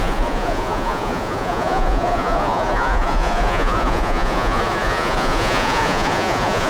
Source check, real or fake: fake